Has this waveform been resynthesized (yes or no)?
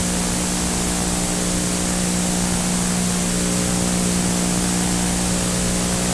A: no